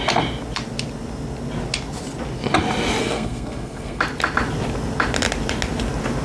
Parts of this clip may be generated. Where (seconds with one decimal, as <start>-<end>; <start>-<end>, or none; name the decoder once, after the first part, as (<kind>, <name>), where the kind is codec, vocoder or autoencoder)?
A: 3.0-4.0 (codec, SNAC)